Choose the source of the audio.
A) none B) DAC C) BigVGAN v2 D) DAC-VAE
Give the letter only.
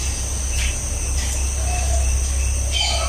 A